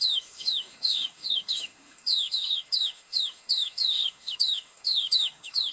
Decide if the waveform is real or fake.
fake